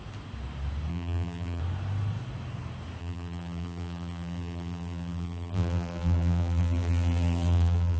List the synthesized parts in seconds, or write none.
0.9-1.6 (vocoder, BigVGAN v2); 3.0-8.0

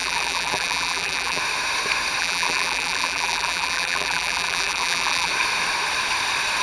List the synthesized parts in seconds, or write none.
0.0-1.4 (vocoder, BigVGAN v2); 2.2-5.3

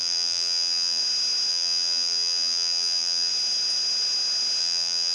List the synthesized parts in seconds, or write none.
0.0-1.0 (vocoder, BigVGAN v2); 1.5-3.3; 4.6-5.1

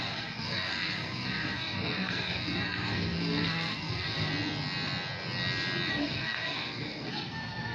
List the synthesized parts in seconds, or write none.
0.0-4.3 (codec, SNAC); 5.9-7.7

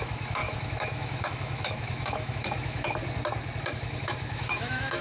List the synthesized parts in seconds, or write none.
0.0-3.0 (autoencoder, DAC-VAE); 3.6-5.0